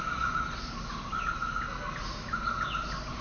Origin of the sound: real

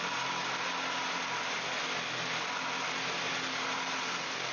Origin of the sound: real